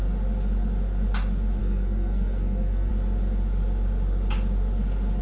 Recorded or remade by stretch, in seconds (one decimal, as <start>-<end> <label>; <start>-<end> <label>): 0.0-1.6 recorded; 1.6-2.9 remade; 2.9-5.2 recorded